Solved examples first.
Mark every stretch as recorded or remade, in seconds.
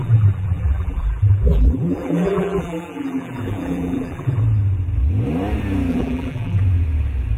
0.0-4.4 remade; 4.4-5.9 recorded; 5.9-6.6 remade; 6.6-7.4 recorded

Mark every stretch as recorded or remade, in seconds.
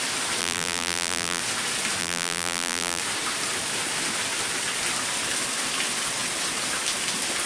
0.0-0.4 recorded; 0.4-1.4 remade; 1.4-2.0 recorded; 2.0-3.0 remade; 3.0-7.5 recorded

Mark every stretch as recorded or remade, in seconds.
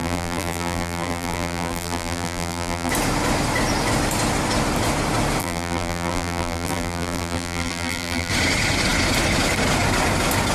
0.0-2.9 remade; 2.9-5.4 recorded; 5.4-8.3 remade; 8.3-10.5 recorded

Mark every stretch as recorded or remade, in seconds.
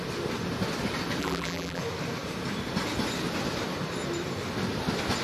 0.0-1.2 recorded; 1.2-1.8 remade; 1.8-5.2 recorded